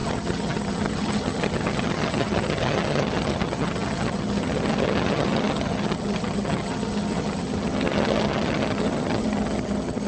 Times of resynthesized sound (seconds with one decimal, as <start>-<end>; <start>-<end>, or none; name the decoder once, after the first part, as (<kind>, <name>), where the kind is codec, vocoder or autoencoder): 0.0-10.1 (vocoder, HiFi-GAN)